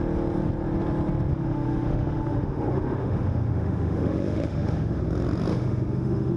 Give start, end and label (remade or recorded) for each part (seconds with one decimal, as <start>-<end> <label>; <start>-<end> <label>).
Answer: 0.0-1.3 recorded; 1.3-5.0 remade; 5.0-5.5 recorded; 5.5-6.4 remade